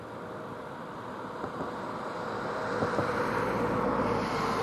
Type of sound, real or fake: real